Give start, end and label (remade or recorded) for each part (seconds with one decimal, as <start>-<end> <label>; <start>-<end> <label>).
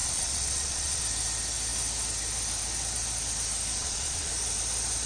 0.0-1.0 remade; 1.0-3.8 recorded; 3.8-4.3 remade; 4.3-5.1 recorded